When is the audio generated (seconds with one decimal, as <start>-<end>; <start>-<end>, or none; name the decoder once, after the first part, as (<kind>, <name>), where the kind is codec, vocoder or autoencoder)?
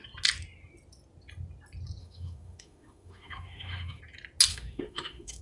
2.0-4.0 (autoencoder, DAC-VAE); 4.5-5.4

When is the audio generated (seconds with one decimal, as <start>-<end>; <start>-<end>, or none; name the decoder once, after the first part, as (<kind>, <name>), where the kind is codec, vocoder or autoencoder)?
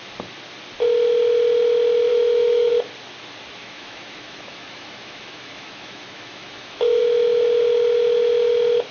2.1-2.7 (autoencoder, DAC-VAE); 3.6-7.0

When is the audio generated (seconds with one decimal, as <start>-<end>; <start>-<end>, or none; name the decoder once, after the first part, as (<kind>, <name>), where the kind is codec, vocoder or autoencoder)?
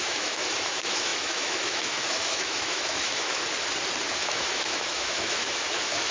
0.0-3.4 (autoencoder, DAC-VAE); 4.2-6.1